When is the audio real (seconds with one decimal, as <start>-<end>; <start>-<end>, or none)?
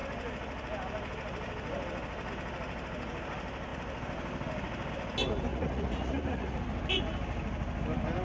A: 0.0-5.5; 6.6-8.2